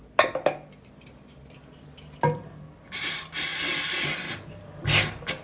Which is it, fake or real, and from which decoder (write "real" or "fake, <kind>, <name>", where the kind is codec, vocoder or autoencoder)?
real